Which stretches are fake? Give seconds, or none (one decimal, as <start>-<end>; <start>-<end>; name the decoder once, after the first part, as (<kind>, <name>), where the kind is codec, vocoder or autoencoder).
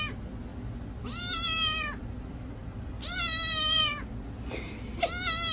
none